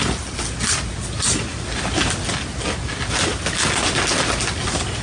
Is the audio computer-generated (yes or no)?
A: no